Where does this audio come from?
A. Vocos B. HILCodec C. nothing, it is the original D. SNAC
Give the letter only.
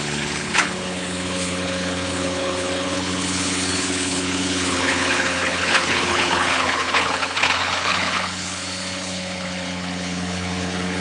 B